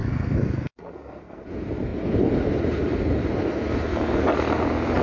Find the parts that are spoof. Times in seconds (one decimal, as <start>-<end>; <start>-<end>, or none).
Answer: 0.0-1.4